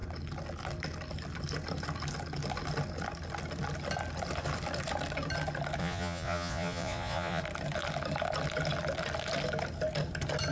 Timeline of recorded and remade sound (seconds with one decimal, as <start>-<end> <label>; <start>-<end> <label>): 0.0-5.8 recorded; 5.8-7.4 remade; 7.4-10.5 recorded